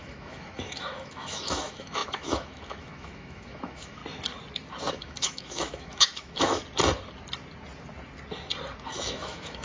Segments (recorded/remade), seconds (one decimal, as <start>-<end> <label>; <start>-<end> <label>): 0.0-4.0 remade; 4.0-4.9 recorded; 4.9-6.6 remade; 6.6-8.9 recorded; 8.9-9.6 remade